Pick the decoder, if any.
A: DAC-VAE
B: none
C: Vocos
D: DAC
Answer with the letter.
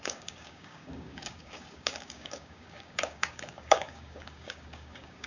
D